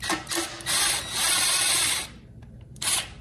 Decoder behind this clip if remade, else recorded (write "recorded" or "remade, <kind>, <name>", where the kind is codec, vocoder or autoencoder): remade, vocoder, BigVGAN v2